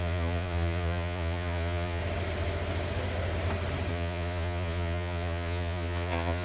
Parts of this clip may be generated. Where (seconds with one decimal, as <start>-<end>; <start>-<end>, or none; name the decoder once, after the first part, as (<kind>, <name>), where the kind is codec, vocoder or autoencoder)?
0.0-2.0 (vocoder, Vocos); 3.9-6.4